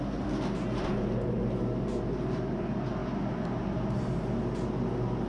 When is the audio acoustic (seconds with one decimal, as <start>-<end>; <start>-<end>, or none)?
0.0-5.3